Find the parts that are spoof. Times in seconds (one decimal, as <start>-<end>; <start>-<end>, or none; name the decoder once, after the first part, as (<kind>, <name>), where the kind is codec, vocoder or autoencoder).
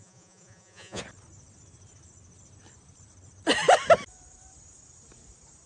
0.0-1.0 (vocoder, Vocos)